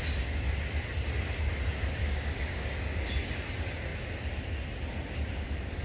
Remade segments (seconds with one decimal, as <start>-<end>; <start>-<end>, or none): 2.0-3.1